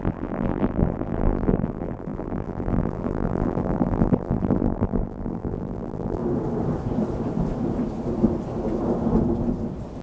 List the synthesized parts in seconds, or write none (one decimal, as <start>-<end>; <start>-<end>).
0.0-6.2